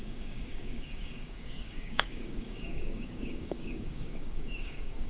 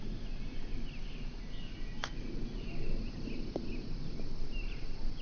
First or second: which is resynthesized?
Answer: first